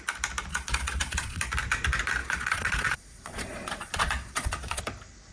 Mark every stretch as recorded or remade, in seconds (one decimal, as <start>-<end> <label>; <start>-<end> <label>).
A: 0.0-0.5 recorded; 0.5-1.4 remade; 1.4-2.2 recorded; 2.2-4.8 remade; 4.8-5.3 recorded